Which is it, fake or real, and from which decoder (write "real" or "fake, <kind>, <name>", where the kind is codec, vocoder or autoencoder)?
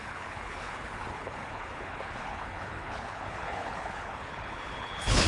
fake, codec, HILCodec